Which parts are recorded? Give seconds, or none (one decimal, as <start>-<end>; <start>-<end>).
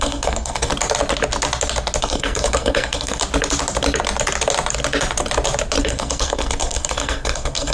0.7-2.0; 3.2-5.8